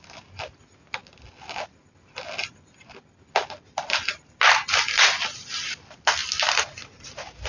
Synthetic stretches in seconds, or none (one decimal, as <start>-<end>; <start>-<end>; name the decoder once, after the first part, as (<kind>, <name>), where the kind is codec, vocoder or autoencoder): none